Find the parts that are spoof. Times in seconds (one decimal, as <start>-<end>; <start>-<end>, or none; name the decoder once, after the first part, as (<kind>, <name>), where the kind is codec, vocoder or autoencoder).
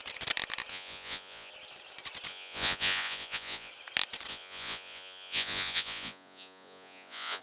0.7-1.5 (vocoder, Vocos); 2.3-3.7; 4.3-7.4